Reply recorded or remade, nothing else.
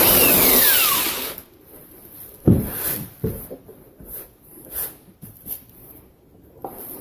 recorded